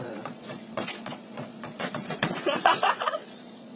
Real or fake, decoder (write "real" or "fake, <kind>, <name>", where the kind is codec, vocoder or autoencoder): fake, vocoder, Vocos